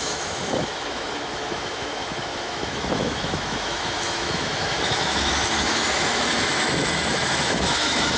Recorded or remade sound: remade